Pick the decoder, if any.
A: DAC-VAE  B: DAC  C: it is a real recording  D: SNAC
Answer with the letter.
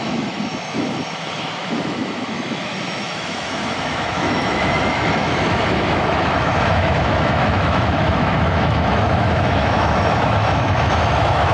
A